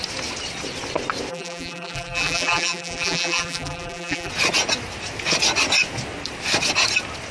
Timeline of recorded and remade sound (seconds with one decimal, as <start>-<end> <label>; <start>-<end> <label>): 0.0-1.3 recorded; 1.3-4.3 remade; 4.3-7.3 recorded